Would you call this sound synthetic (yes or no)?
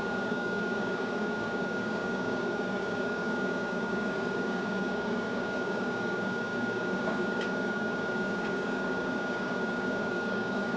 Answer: yes